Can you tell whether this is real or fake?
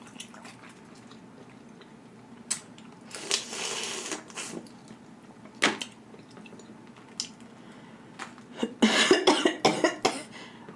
real